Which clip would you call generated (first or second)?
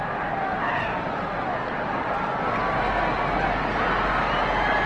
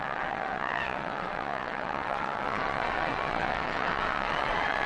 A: second